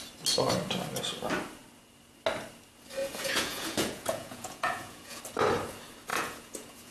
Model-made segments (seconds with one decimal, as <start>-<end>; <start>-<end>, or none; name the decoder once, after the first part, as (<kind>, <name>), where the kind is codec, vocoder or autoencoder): 3.0-5.2 (vocoder, Vocos); 6.1-6.9